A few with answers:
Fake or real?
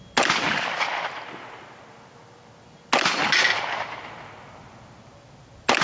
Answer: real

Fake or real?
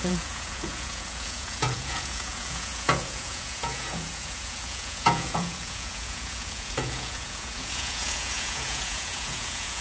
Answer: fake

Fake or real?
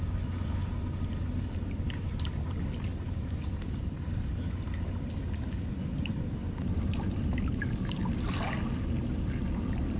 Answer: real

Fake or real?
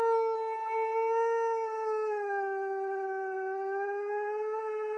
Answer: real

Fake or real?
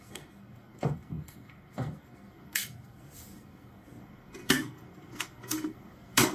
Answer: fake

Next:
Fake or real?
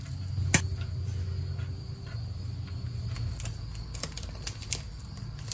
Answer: real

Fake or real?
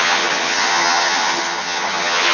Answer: fake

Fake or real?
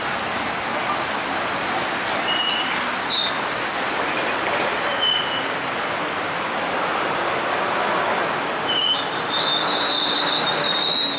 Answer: real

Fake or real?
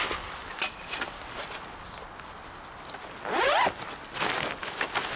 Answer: real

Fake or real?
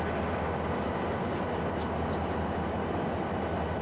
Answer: real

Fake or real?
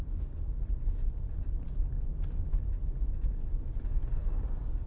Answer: real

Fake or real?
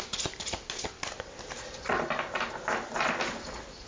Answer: real